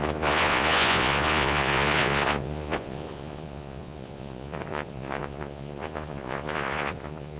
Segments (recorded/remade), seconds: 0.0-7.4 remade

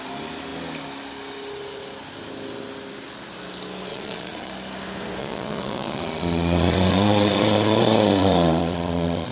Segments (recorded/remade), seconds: 0.0-3.9 recorded; 3.9-4.5 remade; 4.5-5.2 recorded; 5.2-9.3 remade